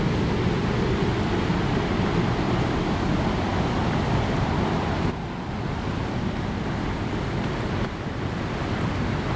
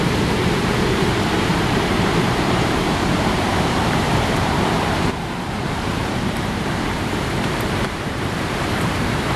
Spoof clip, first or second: second